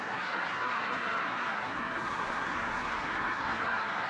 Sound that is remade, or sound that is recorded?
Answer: remade